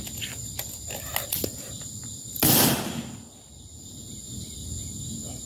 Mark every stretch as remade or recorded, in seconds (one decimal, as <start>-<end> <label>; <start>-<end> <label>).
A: 0.0-5.5 recorded